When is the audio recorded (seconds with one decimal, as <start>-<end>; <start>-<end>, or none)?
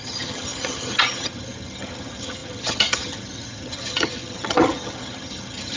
none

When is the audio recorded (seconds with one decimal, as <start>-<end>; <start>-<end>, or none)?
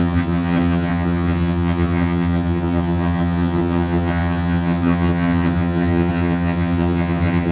none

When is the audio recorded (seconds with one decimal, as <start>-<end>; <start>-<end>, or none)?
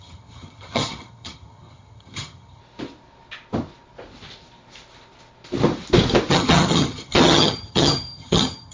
2.6-6.3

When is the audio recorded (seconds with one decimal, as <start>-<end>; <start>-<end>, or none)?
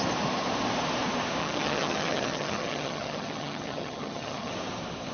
0.0-1.4; 4.5-5.1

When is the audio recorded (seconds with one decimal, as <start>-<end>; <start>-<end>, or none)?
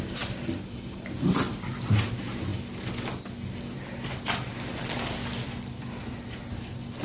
0.0-7.0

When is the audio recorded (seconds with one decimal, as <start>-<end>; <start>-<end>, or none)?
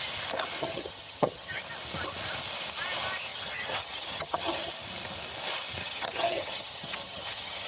0.0-0.6; 1.6-3.3; 4.7-5.8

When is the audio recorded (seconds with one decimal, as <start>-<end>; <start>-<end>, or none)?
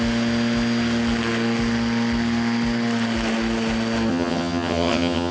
0.0-4.1